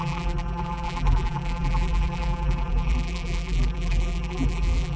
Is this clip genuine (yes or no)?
no